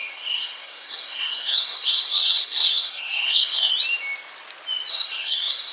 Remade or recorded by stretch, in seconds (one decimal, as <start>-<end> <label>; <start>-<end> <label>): 0.0-3.7 remade; 3.7-4.9 recorded; 4.9-5.7 remade